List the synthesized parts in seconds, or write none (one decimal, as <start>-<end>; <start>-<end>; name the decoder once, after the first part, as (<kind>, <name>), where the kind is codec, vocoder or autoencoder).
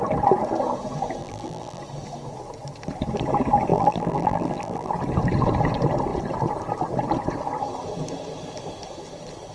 1.2-1.8 (vocoder, BigVGAN v2); 3.7-4.9